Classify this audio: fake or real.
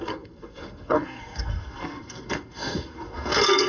fake